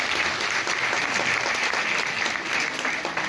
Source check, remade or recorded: remade